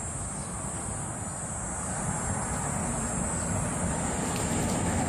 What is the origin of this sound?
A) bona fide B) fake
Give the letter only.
A